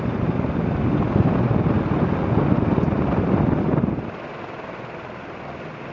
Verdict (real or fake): real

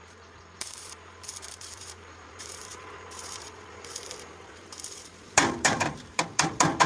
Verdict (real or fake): fake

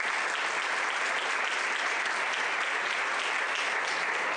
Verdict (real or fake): real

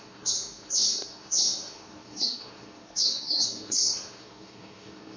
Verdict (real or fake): fake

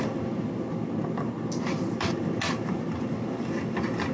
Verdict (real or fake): real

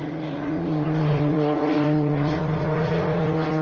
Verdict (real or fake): fake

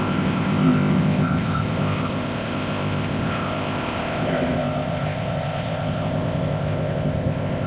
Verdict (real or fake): fake